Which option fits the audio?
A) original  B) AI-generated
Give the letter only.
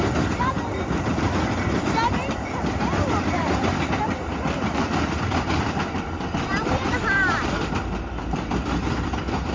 B